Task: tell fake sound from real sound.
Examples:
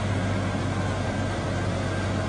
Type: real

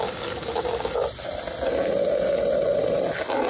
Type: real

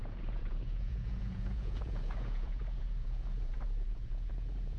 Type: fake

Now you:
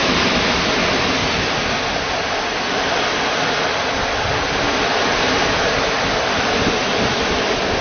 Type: real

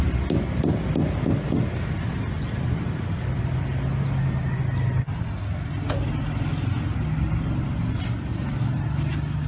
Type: real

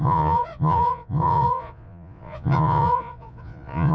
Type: fake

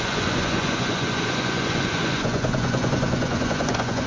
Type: fake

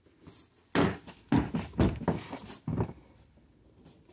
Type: real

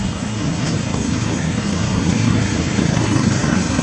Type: fake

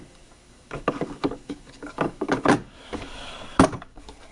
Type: fake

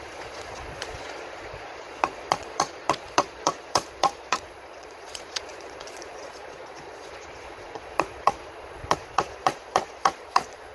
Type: fake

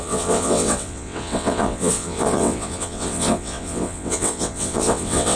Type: fake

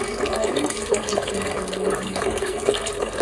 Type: fake